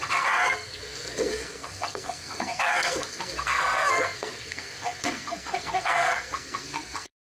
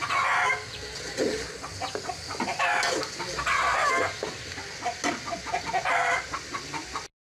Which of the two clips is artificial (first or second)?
first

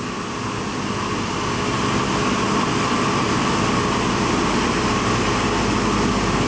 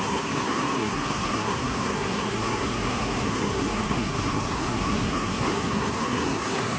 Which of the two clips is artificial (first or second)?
second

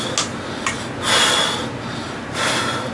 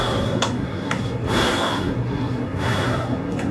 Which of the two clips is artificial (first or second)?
second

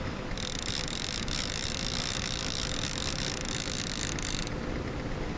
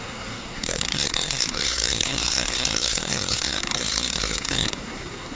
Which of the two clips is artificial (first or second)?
second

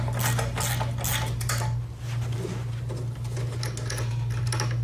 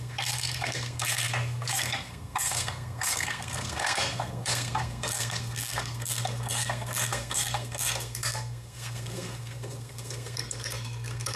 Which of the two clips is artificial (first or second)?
second